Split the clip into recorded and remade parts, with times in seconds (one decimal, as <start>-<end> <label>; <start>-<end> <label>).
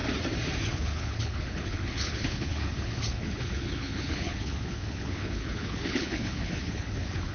0.0-0.6 recorded; 0.6-7.3 remade